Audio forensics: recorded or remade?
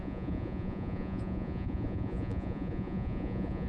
remade